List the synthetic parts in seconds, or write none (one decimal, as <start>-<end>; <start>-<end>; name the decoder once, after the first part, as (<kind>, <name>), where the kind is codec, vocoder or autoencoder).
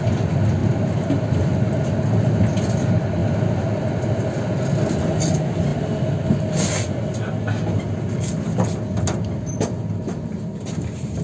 none